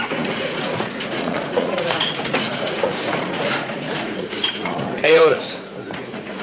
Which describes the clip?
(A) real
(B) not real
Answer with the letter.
B